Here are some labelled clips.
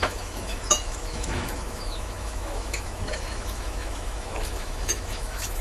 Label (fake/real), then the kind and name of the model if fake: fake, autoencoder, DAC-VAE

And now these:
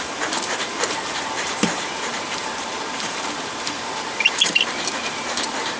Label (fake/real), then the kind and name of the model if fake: fake, vocoder, BigVGAN v2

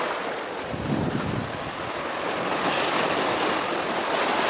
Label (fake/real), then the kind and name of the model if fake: real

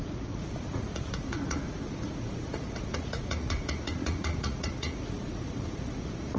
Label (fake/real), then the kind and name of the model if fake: fake, vocoder, Vocos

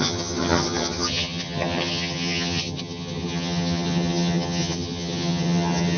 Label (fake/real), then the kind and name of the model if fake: fake, vocoder, HiFi-GAN